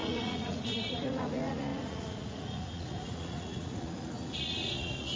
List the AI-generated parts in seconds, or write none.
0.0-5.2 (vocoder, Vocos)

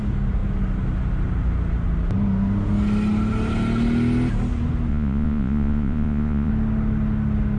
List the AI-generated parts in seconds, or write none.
4.9-6.5 (vocoder, Vocos)

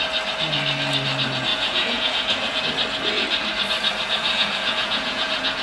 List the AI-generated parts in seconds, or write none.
1.5-2.6 (vocoder, Vocos); 4.2-5.6

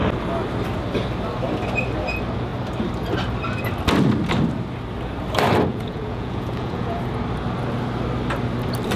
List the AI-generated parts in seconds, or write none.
5.7-7.0 (vocoder, Vocos)

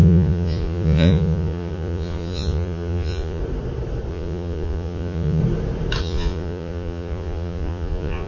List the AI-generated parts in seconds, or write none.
0.0-3.4 (vocoder, Vocos); 4.1-5.4; 6.0-8.3

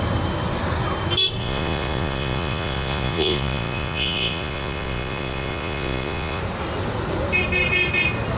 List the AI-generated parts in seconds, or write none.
1.4-6.4 (vocoder, Vocos)

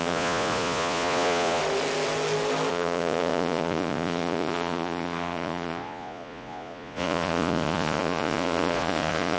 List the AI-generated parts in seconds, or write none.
0.0-1.6 (vocoder, Vocos); 2.7-9.4